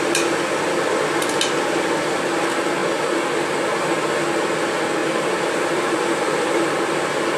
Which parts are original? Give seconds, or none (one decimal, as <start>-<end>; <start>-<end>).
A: 0.0-5.0; 6.8-7.4